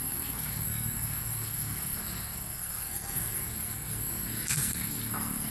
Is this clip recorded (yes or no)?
no